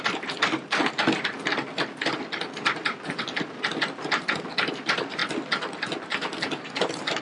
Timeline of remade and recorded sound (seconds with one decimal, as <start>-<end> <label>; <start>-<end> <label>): 0.0-7.2 recorded